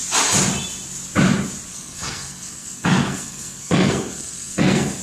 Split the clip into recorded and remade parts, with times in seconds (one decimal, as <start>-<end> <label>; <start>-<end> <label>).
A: 0.0-1.7 recorded; 1.7-5.0 remade